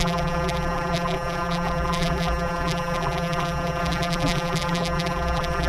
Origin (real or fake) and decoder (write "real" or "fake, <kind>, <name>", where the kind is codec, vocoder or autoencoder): fake, vocoder, BigVGAN v2